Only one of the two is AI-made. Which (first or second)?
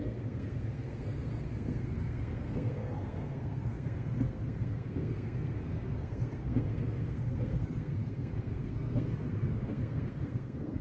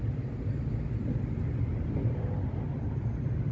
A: first